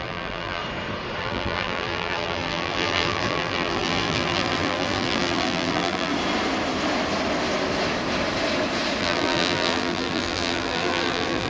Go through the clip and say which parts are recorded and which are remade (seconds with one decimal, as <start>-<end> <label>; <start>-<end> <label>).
0.0-0.6 remade; 0.6-1.2 recorded; 1.2-6.1 remade; 6.1-9.0 recorded; 9.0-11.5 remade